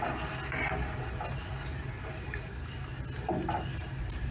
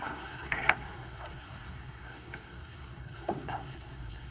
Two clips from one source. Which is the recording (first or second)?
first